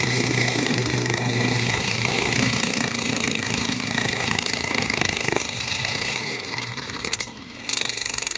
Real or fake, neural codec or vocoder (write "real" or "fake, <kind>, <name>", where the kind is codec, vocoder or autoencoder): fake, codec, SNAC